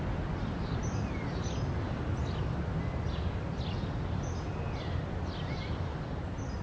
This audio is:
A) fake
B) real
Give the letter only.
B